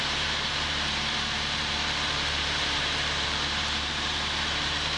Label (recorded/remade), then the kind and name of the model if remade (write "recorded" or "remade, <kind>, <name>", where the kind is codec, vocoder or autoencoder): remade, vocoder, BigVGAN v2